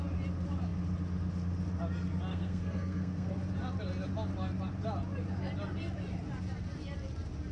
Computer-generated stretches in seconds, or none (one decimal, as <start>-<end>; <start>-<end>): 2.3-3.3